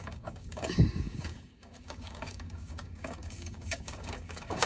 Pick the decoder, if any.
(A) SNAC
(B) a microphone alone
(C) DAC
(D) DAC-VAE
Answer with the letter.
C